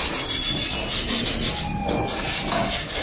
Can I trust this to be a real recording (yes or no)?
yes